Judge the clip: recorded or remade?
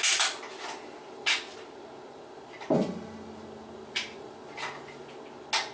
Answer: recorded